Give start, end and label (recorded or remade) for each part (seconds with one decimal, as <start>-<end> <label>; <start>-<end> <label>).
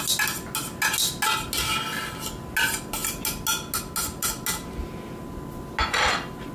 0.0-6.5 recorded